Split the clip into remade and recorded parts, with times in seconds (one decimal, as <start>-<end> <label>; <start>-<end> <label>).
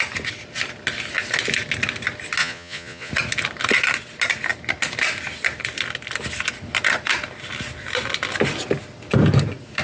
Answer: 0.0-2.4 recorded; 2.4-3.1 remade; 3.1-9.8 recorded